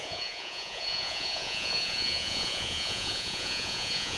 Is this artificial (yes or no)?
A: yes